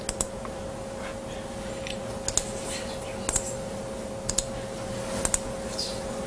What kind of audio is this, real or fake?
real